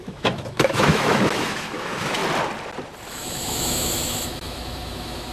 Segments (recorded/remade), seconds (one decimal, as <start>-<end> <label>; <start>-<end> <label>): 0.0-2.2 remade; 2.2-3.1 recorded; 3.1-5.3 remade